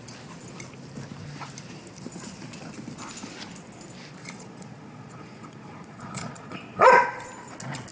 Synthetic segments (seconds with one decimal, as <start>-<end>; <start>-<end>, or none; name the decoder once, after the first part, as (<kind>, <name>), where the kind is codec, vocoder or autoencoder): 4.2-6.9 (vocoder, Vocos)